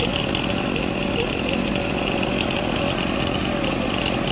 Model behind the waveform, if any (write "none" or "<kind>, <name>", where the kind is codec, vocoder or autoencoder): none